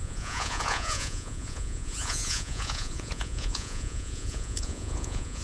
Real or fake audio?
fake